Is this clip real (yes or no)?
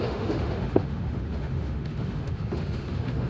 no